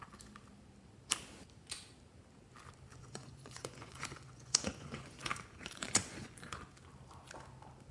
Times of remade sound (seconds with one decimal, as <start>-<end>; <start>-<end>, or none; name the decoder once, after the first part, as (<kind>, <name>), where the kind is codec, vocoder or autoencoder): 2.9-6.6 (vocoder, Vocos)